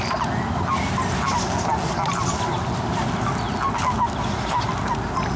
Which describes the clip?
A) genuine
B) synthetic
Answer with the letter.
A